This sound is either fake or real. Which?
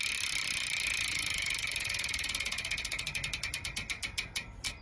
real